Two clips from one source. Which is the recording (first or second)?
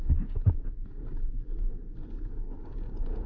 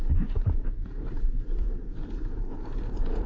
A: first